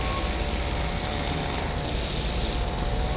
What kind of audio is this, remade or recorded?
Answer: recorded